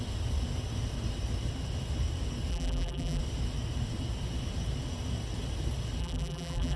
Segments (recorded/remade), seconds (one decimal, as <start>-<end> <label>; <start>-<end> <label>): 0.0-2.5 recorded; 2.5-3.2 remade; 3.2-6.0 recorded; 6.0-6.8 remade